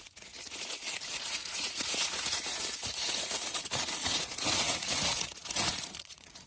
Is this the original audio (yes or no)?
no